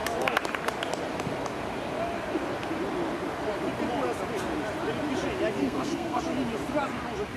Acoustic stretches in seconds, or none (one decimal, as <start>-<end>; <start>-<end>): 0.0-5.6; 6.2-7.4